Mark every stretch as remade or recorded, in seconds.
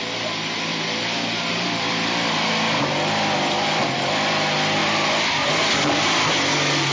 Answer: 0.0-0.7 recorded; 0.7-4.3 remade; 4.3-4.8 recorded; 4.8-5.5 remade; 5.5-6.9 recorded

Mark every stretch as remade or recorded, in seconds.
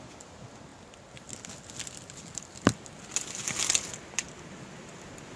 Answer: 0.0-5.4 recorded